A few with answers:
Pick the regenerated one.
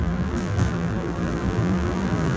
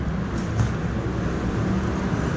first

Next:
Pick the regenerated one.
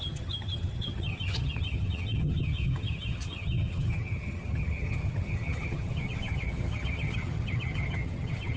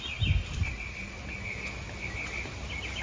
first